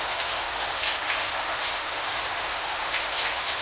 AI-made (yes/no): yes